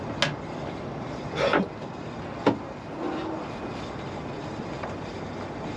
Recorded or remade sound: recorded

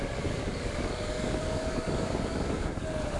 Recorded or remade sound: remade